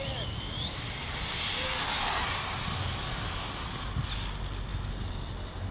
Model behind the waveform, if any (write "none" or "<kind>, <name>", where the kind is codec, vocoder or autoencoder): none